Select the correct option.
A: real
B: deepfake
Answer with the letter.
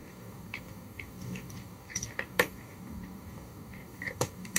B